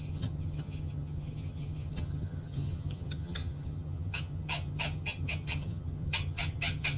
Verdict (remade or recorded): remade